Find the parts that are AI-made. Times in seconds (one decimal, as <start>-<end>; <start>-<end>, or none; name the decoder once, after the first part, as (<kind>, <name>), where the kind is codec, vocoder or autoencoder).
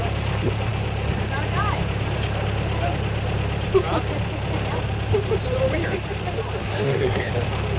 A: 6.6-7.3 (codec, SNAC)